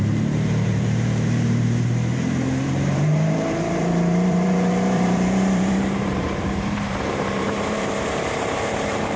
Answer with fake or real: fake